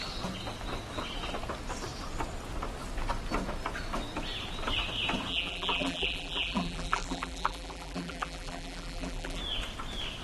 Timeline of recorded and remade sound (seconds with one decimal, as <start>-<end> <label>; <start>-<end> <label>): 0.0-5.3 recorded; 5.3-9.4 remade; 9.4-10.2 recorded